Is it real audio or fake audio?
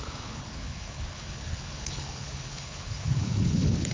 fake